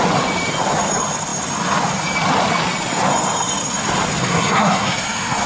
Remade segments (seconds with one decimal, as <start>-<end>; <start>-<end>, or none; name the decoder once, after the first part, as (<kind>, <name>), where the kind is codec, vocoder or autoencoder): 4.2-5.5 (codec, SNAC)